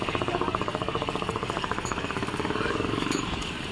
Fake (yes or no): yes